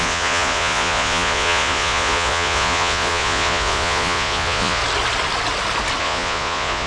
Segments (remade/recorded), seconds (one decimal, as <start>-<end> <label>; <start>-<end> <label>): 0.0-4.8 remade; 4.8-6.0 recorded; 6.0-6.9 remade

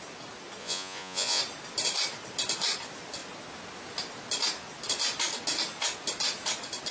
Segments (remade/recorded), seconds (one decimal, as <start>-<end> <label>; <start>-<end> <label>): 0.0-0.6 recorded; 0.6-1.4 remade; 1.4-6.9 recorded

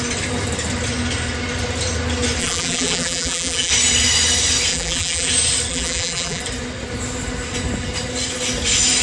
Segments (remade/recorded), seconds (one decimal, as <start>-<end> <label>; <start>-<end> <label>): 0.0-2.4 recorded; 2.4-3.7 remade; 3.7-4.7 recorded; 4.7-5.3 remade; 5.3-5.7 recorded; 5.7-6.4 remade; 6.4-9.0 recorded

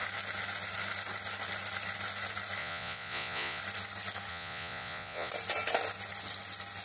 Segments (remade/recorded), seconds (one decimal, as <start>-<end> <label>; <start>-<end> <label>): 0.0-2.6 recorded; 2.6-3.6 remade; 3.6-4.3 recorded; 4.3-5.3 remade; 5.3-6.8 recorded

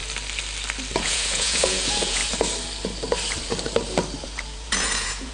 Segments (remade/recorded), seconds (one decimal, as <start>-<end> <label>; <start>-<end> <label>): 0.0-1.0 recorded; 1.0-2.2 remade; 2.2-4.2 recorded; 4.2-5.3 remade

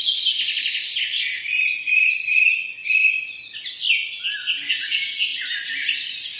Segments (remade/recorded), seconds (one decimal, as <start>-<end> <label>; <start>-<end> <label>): 0.0-6.4 recorded

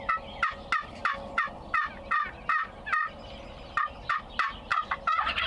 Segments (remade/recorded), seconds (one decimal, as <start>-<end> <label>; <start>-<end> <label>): 0.0-5.5 recorded

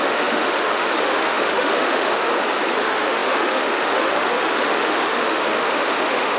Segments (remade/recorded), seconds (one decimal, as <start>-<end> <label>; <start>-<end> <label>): 0.0-2.3 remade; 2.3-2.8 recorded; 2.8-6.4 remade